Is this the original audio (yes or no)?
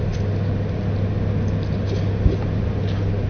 yes